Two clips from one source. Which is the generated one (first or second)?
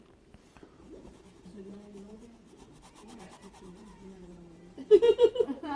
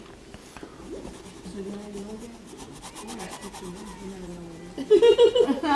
first